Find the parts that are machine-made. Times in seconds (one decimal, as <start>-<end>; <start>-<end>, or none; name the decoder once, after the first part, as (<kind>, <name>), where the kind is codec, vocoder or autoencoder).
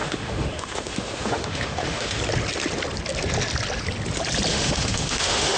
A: 0.0-2.2 (autoencoder, DAC-VAE); 4.5-5.6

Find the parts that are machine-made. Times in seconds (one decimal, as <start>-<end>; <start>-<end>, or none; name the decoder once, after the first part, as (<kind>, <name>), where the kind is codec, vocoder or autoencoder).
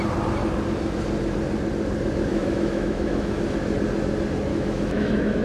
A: 2.3-3.4 (autoencoder, DAC-VAE); 4.5-5.4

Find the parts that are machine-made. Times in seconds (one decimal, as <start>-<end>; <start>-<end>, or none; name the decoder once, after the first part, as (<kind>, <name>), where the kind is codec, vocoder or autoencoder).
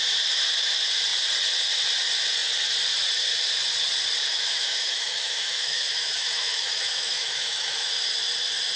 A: 4.2-7.9 (autoencoder, DAC-VAE)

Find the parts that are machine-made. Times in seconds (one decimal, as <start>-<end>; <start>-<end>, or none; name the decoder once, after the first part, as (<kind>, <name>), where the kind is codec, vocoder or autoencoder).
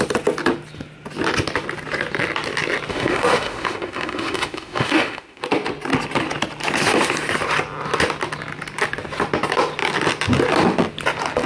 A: 2.9-5.4 (autoencoder, DAC-VAE)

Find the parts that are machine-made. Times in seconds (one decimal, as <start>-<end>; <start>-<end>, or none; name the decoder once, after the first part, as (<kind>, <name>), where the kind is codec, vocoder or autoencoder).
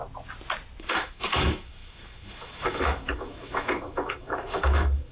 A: 0.8-5.1 (autoencoder, DAC-VAE)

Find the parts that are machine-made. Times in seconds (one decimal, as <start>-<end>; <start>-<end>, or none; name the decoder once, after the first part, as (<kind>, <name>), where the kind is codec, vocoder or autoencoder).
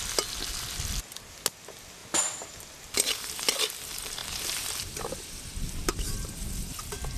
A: none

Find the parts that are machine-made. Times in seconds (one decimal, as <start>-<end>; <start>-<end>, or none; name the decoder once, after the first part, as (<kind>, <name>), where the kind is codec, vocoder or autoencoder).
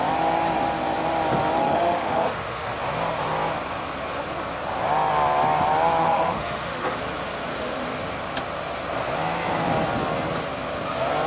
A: 1.6-2.7 (autoencoder, DAC-VAE); 6.0-7.0; 7.5-8.0